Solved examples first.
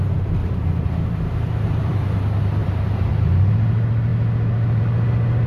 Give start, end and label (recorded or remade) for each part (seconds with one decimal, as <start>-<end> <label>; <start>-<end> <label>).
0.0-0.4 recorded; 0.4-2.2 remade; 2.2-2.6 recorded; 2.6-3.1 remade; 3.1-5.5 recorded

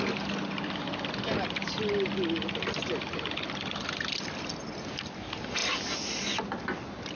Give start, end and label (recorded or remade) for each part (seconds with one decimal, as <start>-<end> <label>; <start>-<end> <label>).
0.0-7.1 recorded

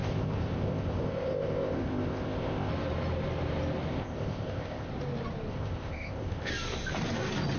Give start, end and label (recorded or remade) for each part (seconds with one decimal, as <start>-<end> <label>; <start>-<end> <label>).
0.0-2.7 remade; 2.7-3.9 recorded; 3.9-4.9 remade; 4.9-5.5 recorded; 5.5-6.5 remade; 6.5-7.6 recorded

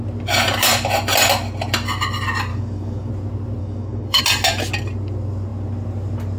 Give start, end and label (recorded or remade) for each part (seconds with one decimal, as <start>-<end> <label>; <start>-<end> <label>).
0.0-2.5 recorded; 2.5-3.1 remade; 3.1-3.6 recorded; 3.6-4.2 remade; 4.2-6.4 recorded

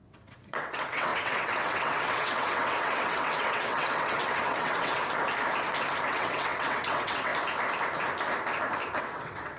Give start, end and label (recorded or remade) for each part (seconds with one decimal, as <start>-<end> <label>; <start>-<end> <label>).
0.0-5.0 remade; 5.0-6.1 recorded; 6.1-7.3 remade; 7.3-9.0 recorded; 9.0-9.6 remade